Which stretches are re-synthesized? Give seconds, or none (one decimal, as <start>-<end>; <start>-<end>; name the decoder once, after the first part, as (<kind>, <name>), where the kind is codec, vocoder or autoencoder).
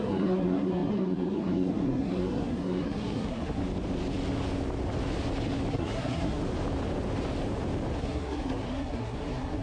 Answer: 0.0-3.6 (codec, SNAC); 5.7-6.4; 8.0-9.6